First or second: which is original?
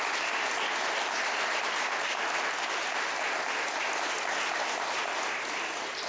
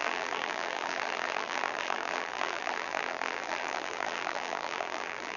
first